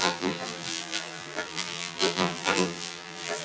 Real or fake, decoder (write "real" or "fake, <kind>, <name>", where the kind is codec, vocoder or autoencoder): fake, vocoder, BigVGAN v2